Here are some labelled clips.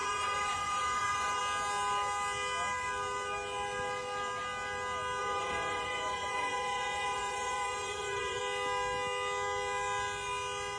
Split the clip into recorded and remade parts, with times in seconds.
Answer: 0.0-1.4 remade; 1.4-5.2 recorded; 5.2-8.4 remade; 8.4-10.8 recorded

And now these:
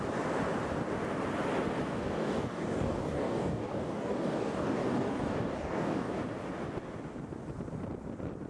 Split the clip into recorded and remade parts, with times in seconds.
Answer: 0.0-2.0 recorded; 2.0-6.1 remade; 6.1-8.5 recorded

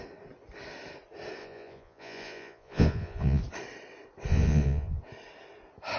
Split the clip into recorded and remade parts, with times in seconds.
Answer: 0.0-1.4 recorded; 1.4-3.4 remade; 3.4-4.3 recorded; 4.3-5.0 remade; 5.0-6.0 recorded

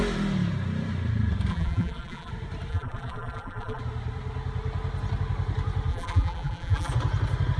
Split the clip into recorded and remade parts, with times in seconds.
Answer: 0.0-1.5 recorded; 1.5-2.3 remade; 2.3-2.7 recorded; 2.7-3.8 remade; 3.8-5.9 recorded; 5.9-6.9 remade; 6.9-7.6 recorded

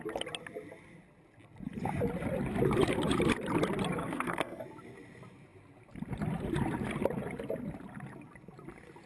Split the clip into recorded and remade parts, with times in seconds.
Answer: 0.0-4.0 recorded; 4.0-4.6 remade; 4.6-9.1 recorded